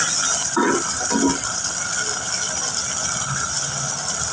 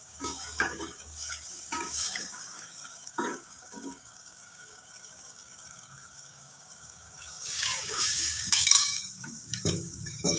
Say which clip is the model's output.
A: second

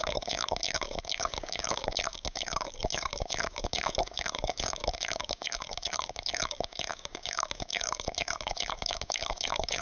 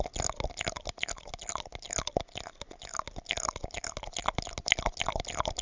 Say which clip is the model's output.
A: first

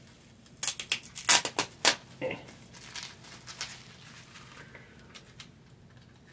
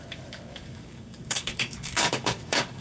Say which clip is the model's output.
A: second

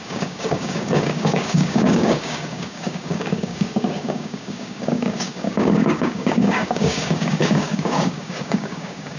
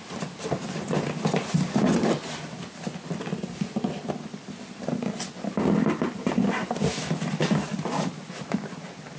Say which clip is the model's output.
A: first